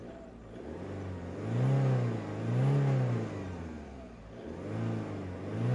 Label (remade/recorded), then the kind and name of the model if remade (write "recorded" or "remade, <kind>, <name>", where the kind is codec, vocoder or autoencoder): recorded